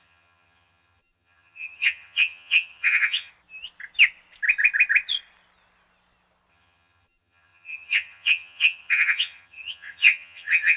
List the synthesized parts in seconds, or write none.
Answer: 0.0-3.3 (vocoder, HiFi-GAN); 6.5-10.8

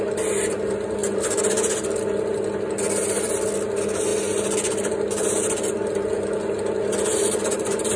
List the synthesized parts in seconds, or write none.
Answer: none